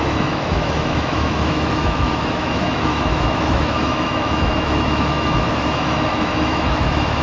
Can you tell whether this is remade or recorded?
remade